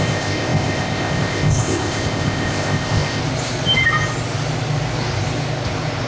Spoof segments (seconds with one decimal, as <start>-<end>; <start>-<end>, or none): 0.0-3.2